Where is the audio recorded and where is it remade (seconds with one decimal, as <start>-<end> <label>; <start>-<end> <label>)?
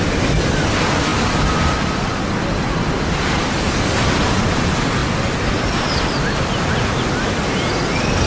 0.0-8.3 recorded